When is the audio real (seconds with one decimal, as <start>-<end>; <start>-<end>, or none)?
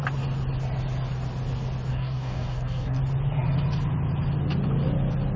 0.0-1.9; 3.0-5.4